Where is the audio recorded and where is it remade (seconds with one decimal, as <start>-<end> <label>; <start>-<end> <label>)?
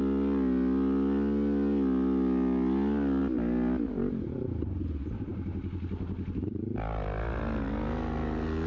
0.0-8.7 recorded